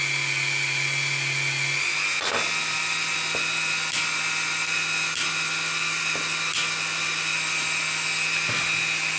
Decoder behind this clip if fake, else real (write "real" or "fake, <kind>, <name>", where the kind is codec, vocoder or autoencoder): real